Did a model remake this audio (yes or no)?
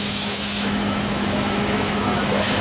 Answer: yes